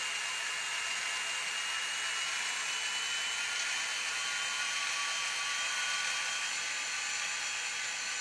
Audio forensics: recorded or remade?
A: recorded